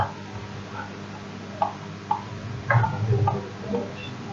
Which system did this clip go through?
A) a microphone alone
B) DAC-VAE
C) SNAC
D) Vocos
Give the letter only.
A